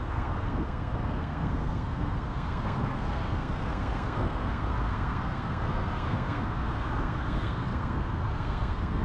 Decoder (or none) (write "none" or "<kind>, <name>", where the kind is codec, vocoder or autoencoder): codec, SNAC